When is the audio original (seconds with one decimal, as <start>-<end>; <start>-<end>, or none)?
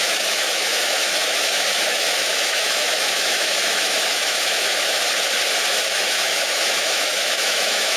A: 5.0-5.7